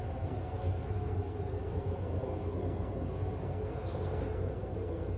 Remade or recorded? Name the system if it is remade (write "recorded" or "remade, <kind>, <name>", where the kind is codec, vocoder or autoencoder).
remade, codec, SNAC